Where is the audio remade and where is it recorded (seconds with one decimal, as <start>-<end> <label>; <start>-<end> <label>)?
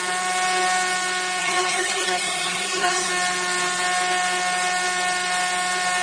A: 0.0-1.4 recorded; 1.4-3.1 remade; 3.1-6.0 recorded